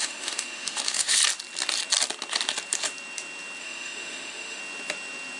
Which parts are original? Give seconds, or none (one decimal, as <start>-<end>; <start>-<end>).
1.2-3.6; 4.6-5.4